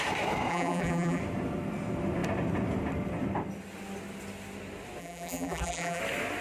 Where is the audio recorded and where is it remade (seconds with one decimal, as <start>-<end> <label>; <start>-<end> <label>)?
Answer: 0.0-0.5 recorded; 0.5-1.2 remade; 1.2-5.0 recorded; 5.0-6.0 remade; 6.0-6.4 recorded